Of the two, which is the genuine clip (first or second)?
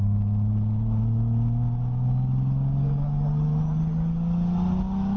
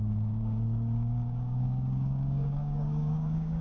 first